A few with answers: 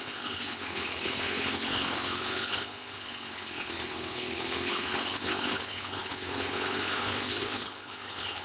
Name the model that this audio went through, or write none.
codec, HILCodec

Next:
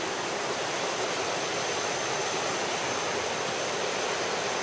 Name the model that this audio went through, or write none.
none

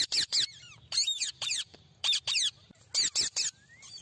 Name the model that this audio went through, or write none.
none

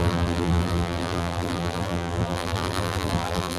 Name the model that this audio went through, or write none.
vocoder, BigVGAN v2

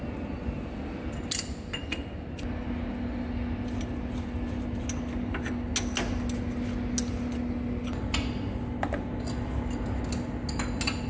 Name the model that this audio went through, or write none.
none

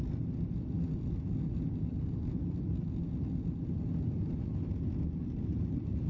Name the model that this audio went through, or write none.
none